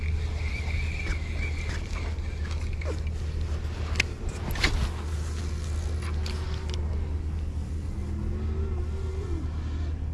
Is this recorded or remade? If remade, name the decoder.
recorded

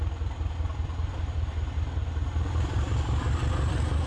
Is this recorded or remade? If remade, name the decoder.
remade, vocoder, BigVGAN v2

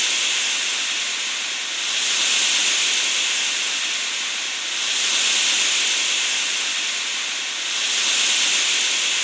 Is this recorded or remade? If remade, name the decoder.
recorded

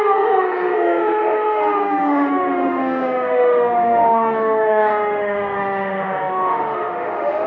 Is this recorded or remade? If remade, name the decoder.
remade, autoencoder, DAC-VAE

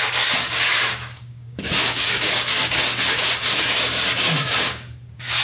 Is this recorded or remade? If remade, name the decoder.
remade, codec, DAC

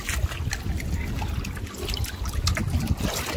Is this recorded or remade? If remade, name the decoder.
recorded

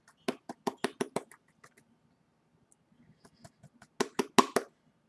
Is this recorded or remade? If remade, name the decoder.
recorded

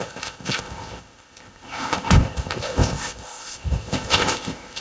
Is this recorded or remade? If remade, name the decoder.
remade, codec, ZipCodec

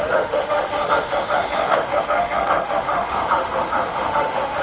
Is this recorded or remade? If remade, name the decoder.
remade, autoencoder, DAC-VAE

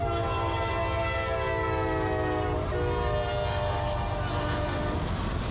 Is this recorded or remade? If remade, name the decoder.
recorded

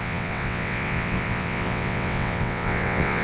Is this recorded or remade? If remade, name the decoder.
remade, vocoder, WaveNeXt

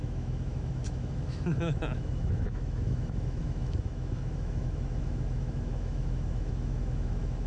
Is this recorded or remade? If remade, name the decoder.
remade, autoencoder, DAC-VAE